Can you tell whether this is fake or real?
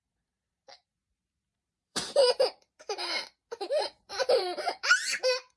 fake